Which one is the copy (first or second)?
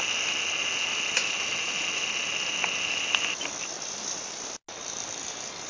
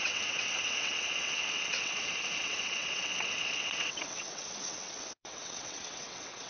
second